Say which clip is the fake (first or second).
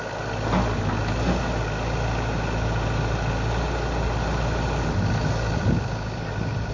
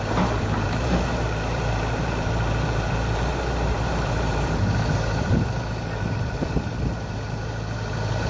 second